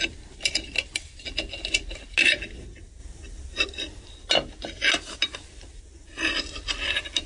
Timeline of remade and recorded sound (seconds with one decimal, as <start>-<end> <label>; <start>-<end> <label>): 0.0-7.3 recorded